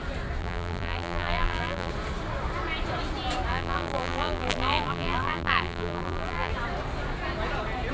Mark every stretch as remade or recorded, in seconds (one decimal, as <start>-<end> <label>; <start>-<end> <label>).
0.0-0.4 recorded; 0.4-1.9 remade; 1.9-3.5 recorded; 3.5-6.5 remade; 6.5-7.9 recorded

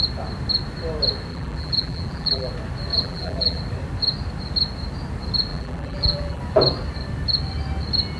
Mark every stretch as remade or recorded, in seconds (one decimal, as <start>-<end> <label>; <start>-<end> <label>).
0.0-1.3 recorded; 1.3-2.5 remade; 2.5-2.9 recorded; 2.9-3.6 remade; 3.6-5.5 recorded; 5.5-6.4 remade; 6.4-8.2 recorded

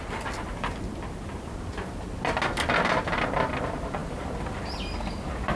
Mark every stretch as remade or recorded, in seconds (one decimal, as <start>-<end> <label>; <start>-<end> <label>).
0.0-5.6 recorded

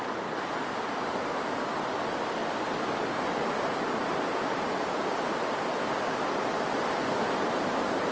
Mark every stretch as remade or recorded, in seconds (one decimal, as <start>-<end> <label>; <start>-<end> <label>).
0.0-8.1 recorded

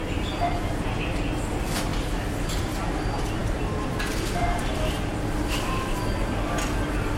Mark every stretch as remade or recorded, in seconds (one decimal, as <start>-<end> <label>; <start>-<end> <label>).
0.0-7.2 recorded

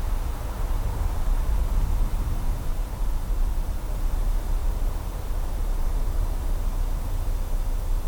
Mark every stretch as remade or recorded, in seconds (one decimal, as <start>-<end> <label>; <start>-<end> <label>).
0.0-2.7 recorded; 2.7-3.9 remade; 3.9-4.6 recorded; 4.6-6.2 remade; 6.2-8.1 recorded

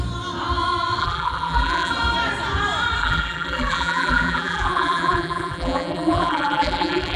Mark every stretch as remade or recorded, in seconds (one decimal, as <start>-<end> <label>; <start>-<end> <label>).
0.0-1.0 recorded; 1.0-1.9 remade; 1.9-3.0 recorded; 3.0-7.2 remade